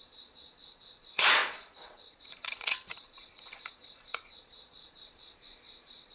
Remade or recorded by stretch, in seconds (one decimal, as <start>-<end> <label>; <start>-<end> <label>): 0.0-6.1 remade